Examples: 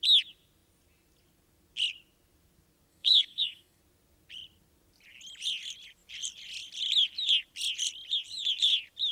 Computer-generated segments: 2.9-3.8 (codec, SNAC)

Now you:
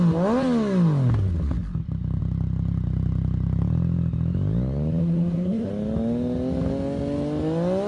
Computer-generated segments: 5.0-5.7 (codec, SNAC)

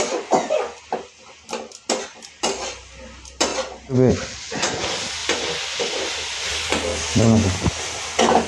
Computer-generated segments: none